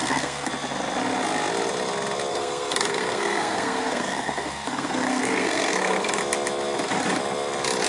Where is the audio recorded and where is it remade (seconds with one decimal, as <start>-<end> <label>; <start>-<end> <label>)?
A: 0.0-0.5 remade; 0.5-2.3 recorded; 2.3-6.2 remade; 6.2-7.9 recorded